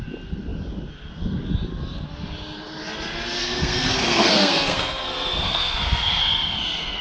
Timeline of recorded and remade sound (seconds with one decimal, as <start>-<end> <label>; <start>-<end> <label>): 0.0-3.4 recorded; 3.4-7.0 remade

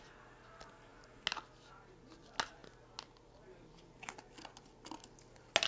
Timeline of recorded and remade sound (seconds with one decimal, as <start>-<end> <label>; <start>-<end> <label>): 0.0-5.7 recorded

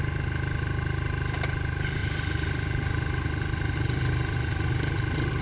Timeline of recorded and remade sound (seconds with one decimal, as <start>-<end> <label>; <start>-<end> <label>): 0.0-5.4 recorded

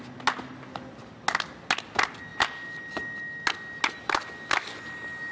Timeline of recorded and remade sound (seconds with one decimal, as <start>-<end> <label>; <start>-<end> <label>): 0.0-5.3 recorded

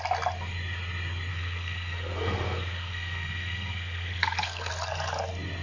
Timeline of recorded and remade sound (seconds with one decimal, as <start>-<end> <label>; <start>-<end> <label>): 0.0-1.3 recorded; 1.3-4.7 remade; 4.7-5.6 recorded